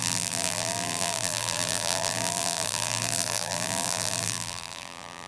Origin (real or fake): fake